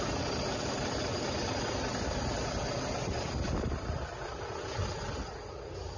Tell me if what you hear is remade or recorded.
recorded